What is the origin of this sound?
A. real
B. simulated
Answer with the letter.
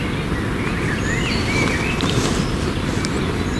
A